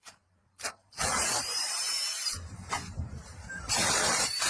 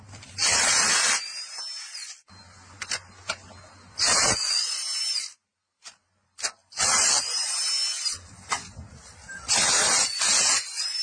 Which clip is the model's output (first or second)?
first